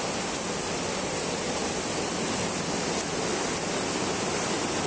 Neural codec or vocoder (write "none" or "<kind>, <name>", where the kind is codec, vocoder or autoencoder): none